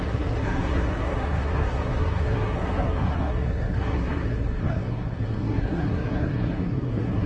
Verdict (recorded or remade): remade